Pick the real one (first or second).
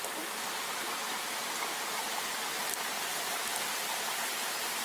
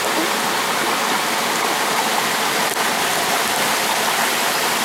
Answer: second